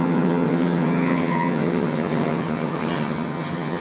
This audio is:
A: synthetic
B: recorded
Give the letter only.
A